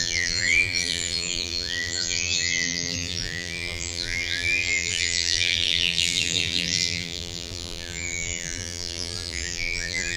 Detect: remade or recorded remade